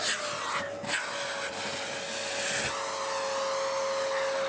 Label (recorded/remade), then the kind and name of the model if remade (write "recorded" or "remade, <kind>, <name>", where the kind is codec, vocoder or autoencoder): recorded